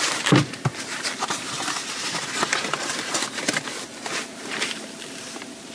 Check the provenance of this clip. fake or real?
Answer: real